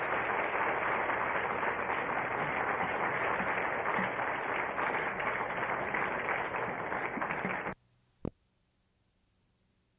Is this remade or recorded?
recorded